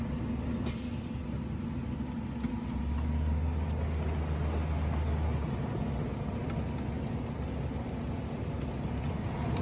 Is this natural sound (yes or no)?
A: yes